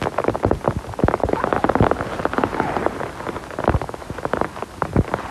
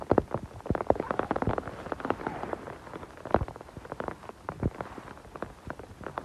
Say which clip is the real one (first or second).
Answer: first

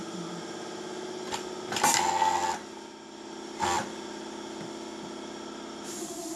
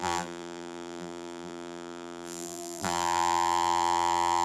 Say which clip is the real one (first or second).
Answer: first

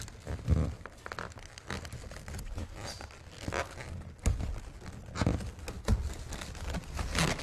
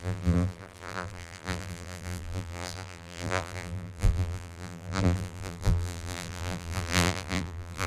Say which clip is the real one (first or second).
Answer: first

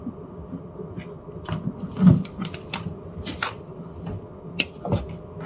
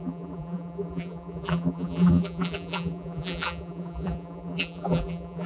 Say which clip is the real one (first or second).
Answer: first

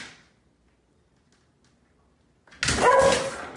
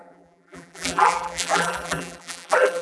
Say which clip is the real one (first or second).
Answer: first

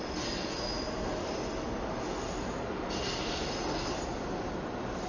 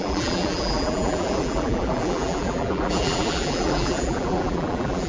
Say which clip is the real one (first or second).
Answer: first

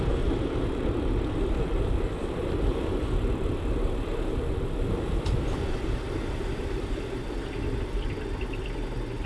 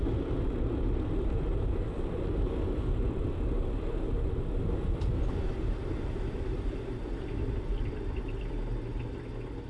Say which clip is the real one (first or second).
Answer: second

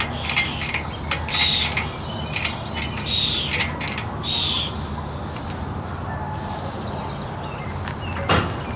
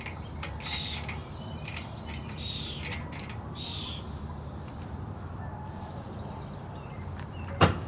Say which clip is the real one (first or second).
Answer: first